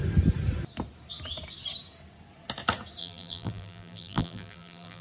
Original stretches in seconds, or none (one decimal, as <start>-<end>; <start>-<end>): 0.0-3.0